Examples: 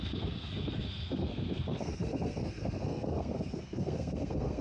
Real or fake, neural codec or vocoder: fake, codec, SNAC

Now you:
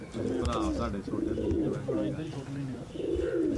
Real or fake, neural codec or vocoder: real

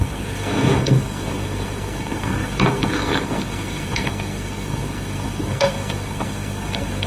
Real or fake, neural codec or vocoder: fake, codec, SNAC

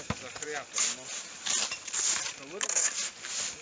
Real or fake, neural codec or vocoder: real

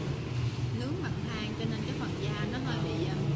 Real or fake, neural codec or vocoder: real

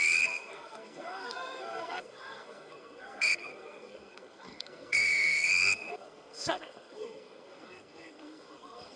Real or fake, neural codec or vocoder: fake, codec, SNAC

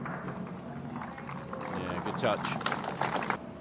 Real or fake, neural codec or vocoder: real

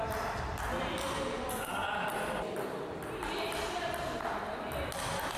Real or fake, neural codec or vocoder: real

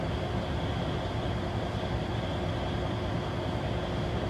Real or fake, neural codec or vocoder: real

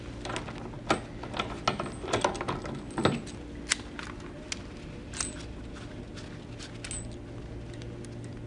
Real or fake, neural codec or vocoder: real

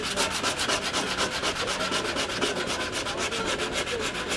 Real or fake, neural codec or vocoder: real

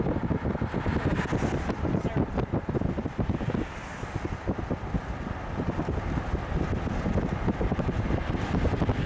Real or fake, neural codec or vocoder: real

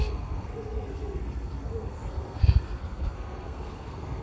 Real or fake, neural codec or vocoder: fake, codec, SNAC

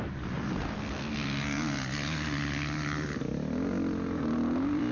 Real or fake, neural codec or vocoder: real